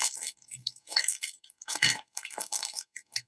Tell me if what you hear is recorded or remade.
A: remade